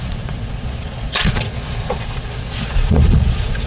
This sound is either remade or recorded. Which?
remade